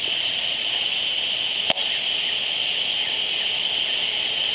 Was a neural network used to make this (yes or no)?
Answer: no